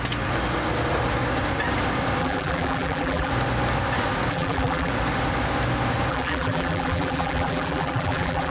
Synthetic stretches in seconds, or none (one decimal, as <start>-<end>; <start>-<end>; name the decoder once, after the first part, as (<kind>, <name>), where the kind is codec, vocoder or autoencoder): 2.2-3.3 (vocoder, BigVGAN v2); 4.3-4.9; 6.1-8.5